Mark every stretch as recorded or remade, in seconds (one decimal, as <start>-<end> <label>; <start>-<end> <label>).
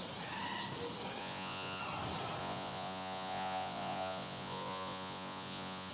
0.0-1.2 recorded; 1.2-1.8 remade; 1.8-2.4 recorded; 2.4-5.9 remade